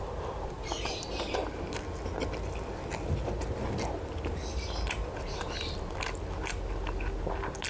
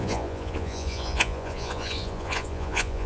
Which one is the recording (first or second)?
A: first